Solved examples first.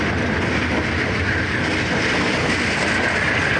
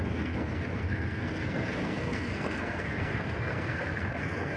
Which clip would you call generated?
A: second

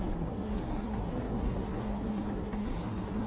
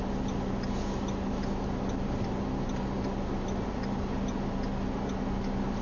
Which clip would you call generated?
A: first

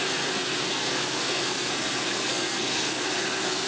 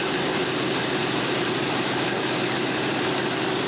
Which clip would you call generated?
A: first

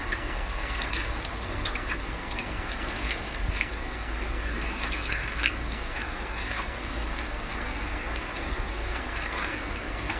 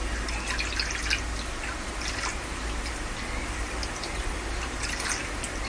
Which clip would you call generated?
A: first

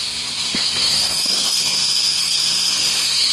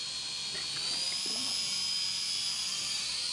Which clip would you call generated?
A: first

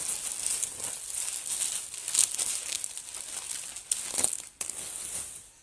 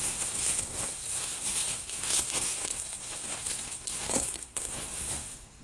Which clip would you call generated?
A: second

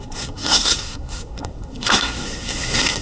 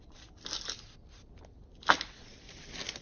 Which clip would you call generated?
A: first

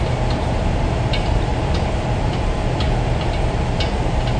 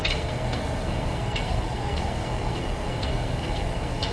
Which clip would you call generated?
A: second